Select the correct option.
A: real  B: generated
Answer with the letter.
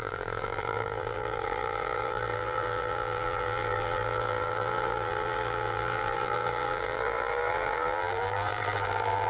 B